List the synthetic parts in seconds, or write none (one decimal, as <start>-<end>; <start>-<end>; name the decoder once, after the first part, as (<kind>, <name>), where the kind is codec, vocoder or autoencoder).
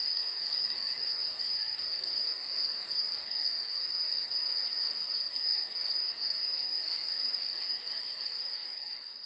0.0-9.3 (codec, SNAC)